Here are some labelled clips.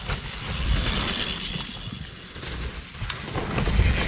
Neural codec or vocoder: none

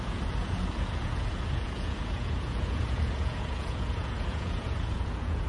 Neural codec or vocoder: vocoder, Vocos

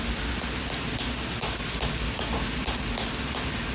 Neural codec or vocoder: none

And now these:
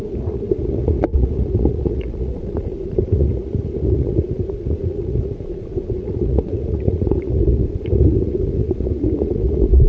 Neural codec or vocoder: vocoder, Vocos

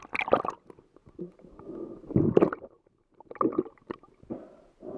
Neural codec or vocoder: none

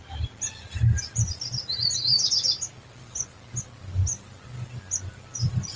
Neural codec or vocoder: vocoder, BigVGAN v2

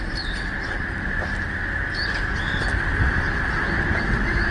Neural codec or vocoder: none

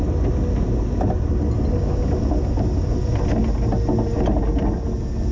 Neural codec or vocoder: none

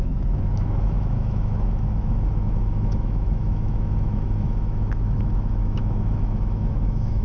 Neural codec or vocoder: autoencoder, DAC-VAE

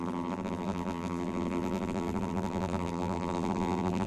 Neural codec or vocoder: vocoder, BigVGAN v2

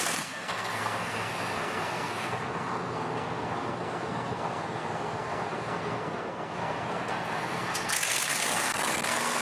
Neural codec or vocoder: codec, SNAC